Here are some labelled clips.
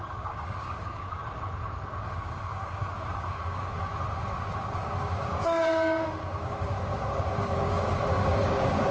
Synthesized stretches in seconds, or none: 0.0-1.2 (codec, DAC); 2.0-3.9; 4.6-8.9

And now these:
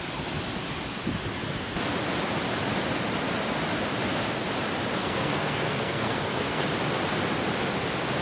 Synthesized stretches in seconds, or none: 5.0-6.7 (codec, SNAC)

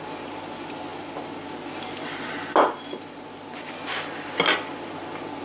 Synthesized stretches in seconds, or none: none

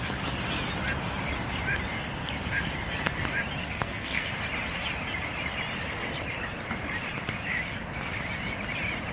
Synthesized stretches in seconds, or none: 3.6-4.3 (codec, SNAC)

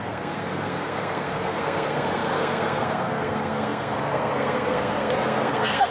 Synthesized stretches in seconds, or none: 0.0-5.9 (codec, SNAC)

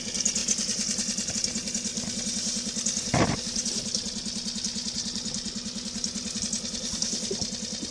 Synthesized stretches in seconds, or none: none

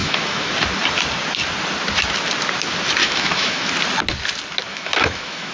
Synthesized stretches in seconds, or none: 0.0-0.5 (autoencoder, DAC-VAE); 3.0-3.7; 4.7-5.5

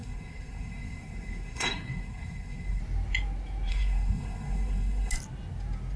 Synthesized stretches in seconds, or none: 0.0-2.8 (codec, SNAC); 3.7-5.1